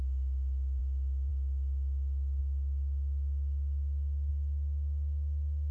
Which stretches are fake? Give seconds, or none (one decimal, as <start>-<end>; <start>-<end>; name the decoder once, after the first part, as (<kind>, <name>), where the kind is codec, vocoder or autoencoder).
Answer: none